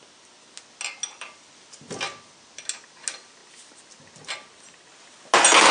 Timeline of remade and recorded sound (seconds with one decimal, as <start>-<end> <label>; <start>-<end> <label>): 0.0-5.7 recorded